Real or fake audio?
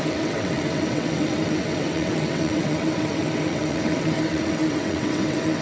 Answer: fake